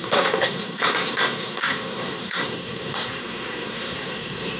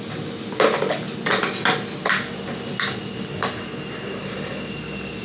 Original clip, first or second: second